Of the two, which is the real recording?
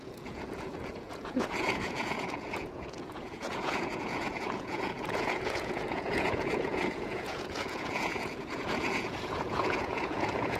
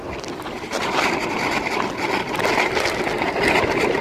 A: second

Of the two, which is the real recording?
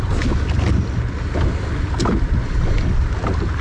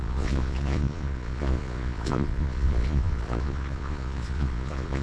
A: first